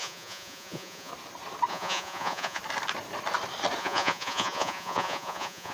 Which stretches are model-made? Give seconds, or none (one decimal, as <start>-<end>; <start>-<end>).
0.0-1.1; 1.7-2.6; 3.8-5.7